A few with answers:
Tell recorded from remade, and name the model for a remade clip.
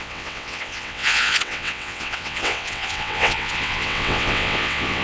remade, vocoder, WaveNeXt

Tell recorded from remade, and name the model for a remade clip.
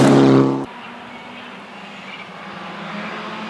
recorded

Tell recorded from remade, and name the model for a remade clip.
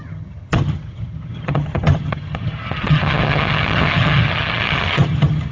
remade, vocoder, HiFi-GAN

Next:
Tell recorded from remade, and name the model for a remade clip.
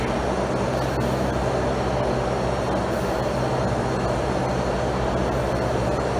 recorded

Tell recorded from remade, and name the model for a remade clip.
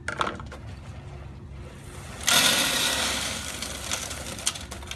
recorded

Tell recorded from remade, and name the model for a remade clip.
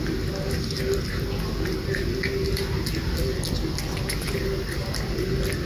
recorded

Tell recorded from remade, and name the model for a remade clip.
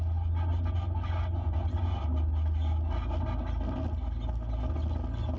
recorded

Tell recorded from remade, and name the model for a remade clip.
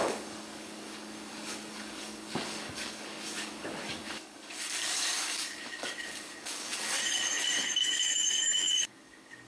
remade, codec, DAC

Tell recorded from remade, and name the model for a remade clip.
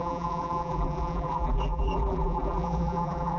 remade, vocoder, BigVGAN v2